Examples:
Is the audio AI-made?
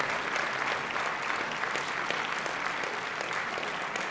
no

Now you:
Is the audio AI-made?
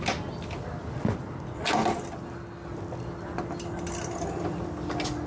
no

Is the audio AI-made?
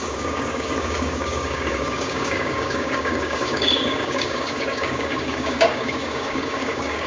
yes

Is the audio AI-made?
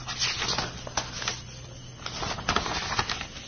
no